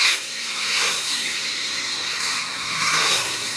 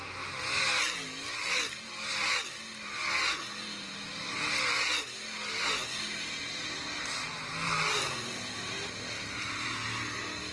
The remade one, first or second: first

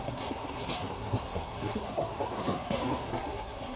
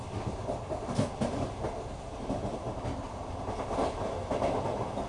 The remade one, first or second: first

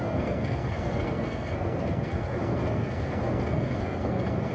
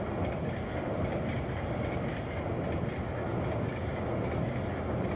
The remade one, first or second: first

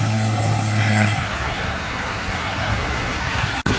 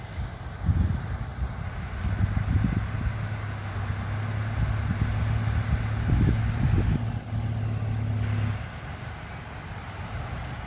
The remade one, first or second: first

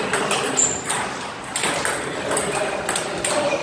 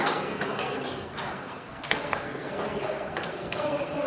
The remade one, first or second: second